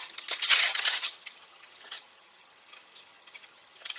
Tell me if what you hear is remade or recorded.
remade